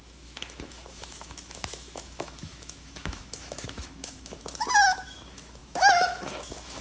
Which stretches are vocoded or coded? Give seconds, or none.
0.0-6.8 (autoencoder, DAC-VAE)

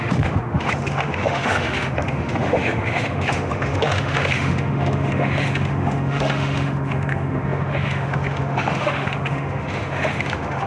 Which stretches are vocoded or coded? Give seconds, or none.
0.0-10.7 (autoencoder, DAC-VAE)

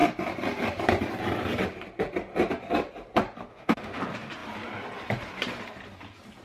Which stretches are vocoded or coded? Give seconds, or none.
3.5-4.0 (autoencoder, DAC-VAE)